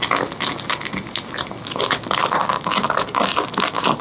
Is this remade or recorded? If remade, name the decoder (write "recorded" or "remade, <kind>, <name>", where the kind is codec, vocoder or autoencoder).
recorded